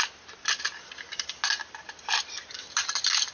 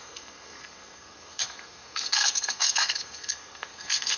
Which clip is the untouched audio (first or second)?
first